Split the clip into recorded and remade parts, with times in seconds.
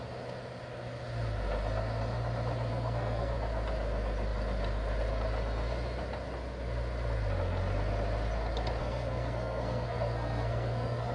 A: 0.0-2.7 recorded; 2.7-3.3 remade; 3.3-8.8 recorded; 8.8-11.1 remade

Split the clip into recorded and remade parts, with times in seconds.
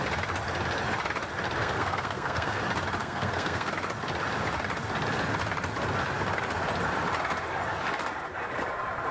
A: 0.0-1.6 recorded; 1.6-2.6 remade; 2.6-3.0 recorded; 3.0-3.7 remade; 3.7-9.1 recorded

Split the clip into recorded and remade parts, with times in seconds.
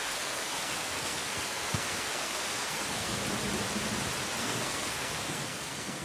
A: 0.0-3.2 remade; 3.2-4.4 recorded; 4.4-6.0 remade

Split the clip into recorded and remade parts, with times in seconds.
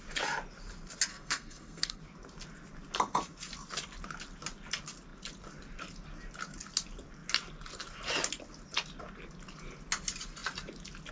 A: 0.0-1.1 recorded; 1.1-2.0 remade; 2.0-11.1 recorded